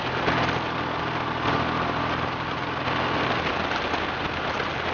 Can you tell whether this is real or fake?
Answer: real